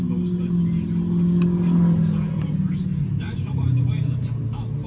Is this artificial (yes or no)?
no